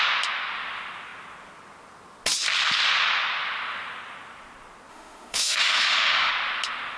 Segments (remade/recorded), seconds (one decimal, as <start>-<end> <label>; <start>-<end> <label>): 0.0-4.9 recorded; 4.9-6.3 remade; 6.3-7.0 recorded